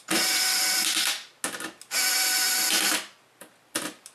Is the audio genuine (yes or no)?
yes